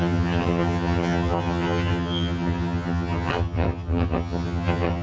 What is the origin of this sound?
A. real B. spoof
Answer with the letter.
B